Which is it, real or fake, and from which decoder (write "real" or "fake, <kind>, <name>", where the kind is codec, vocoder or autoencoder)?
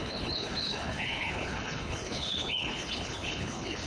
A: fake, codec, HILCodec